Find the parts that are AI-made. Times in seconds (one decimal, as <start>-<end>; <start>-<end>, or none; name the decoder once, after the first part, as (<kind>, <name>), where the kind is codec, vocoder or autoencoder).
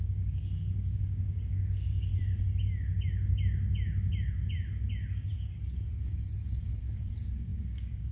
0.0-2.1 (codec, DAC); 6.0-8.1